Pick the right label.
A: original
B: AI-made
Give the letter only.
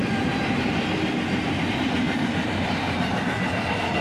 A